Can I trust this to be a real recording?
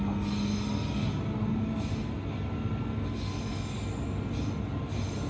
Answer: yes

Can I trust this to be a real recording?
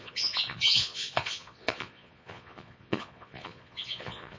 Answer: no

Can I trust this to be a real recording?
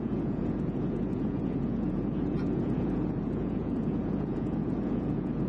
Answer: no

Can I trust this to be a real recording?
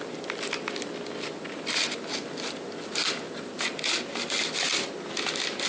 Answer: yes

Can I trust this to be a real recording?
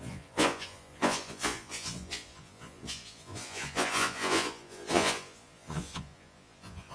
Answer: no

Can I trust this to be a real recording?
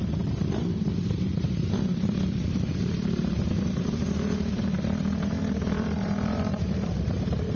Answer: no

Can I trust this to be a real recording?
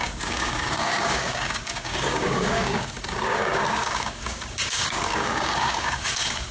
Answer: no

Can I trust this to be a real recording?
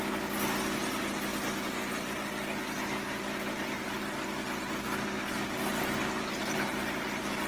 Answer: yes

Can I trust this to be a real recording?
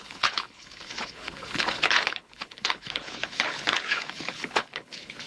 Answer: no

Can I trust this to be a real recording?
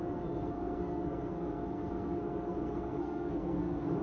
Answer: no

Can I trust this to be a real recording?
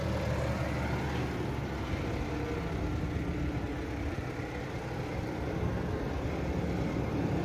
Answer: yes